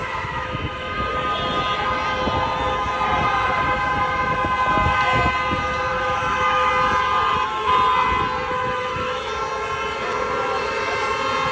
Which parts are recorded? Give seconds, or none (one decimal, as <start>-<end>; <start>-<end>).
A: 1.0-5.9; 6.7-8.5; 9.2-11.5